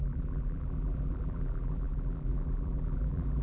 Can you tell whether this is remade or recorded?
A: remade